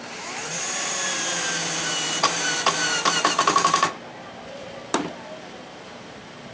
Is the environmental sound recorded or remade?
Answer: remade